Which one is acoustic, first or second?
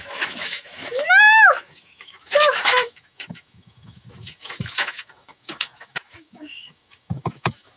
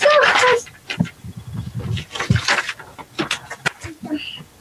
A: second